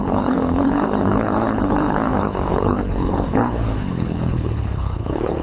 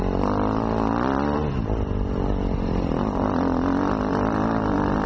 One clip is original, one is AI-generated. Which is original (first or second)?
second